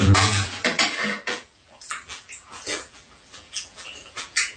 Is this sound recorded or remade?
remade